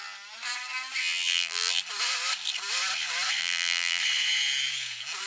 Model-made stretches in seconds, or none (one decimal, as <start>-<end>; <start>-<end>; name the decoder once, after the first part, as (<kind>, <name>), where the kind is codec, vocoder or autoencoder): 1.0-1.8 (vocoder, BigVGAN v2); 3.4-4.0